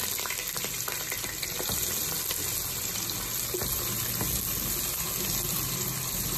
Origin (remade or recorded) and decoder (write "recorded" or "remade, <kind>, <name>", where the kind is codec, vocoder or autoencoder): recorded